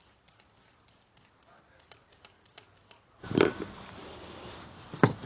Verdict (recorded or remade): recorded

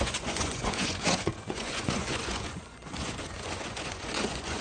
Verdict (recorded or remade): remade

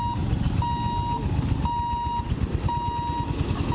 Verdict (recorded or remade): recorded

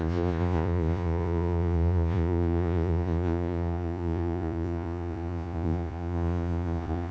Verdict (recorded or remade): remade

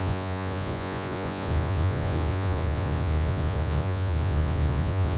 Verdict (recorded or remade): remade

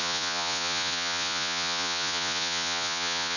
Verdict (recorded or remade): remade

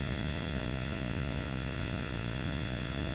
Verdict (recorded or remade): remade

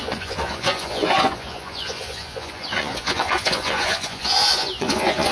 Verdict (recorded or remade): remade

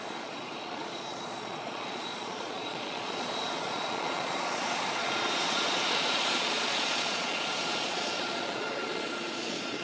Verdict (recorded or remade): remade